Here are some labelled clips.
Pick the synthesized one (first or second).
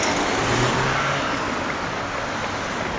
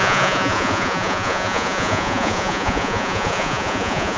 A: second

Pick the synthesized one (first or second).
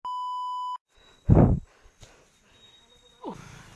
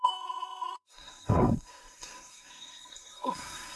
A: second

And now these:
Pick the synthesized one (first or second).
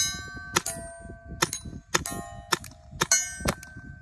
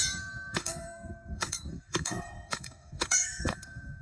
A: second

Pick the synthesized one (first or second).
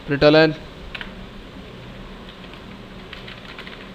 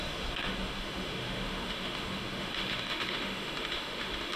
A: second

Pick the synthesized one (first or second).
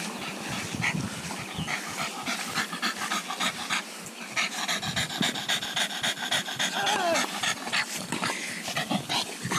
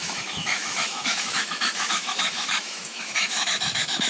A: second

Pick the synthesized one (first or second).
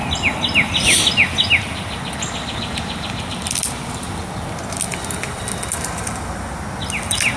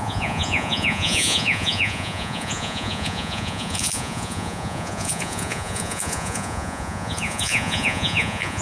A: second